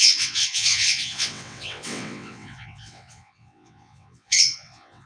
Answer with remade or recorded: remade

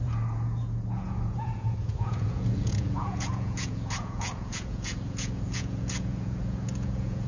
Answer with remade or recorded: remade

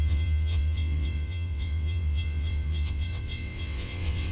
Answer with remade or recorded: remade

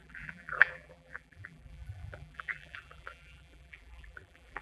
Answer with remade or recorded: remade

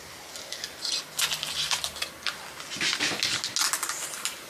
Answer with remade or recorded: recorded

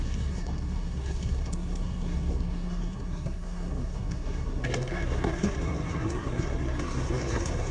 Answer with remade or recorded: remade